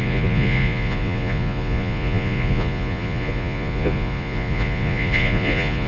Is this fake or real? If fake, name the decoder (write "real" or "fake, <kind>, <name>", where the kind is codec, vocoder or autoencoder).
fake, vocoder, Vocos